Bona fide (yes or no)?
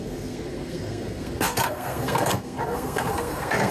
no